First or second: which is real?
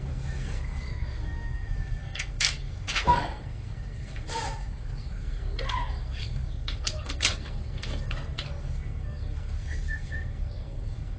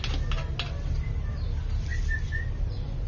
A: second